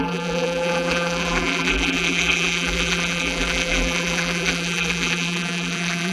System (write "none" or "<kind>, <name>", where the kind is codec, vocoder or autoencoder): vocoder, BigVGAN v2